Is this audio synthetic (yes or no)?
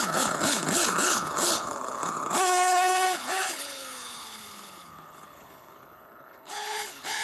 yes